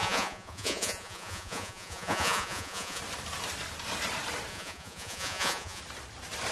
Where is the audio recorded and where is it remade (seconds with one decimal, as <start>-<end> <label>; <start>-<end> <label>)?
0.0-3.0 remade; 3.0-4.5 recorded; 4.5-5.8 remade; 5.8-6.5 recorded